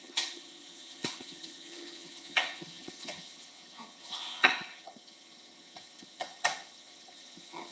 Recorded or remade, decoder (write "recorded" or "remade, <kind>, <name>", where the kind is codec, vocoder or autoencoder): remade, vocoder, HiFi-GAN